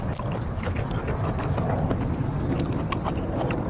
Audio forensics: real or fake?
real